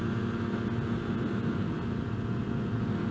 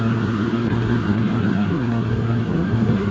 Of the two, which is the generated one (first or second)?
second